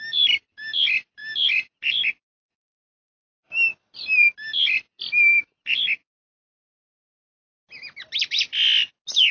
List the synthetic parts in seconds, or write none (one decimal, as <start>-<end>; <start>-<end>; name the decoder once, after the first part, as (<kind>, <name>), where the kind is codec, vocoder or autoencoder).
none

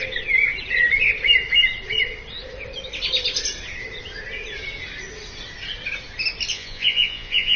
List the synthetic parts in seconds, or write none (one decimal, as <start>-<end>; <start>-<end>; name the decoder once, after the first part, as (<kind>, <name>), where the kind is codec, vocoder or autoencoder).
6.5-7.6 (vocoder, Vocos)

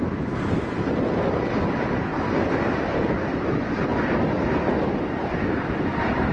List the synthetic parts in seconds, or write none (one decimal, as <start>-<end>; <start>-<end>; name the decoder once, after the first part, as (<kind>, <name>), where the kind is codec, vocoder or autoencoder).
none

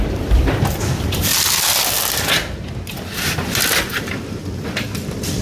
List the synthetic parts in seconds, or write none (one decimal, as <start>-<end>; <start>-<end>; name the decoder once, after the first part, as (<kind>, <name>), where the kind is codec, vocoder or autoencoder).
0.0-1.3 (vocoder, BigVGAN v2); 3.8-5.4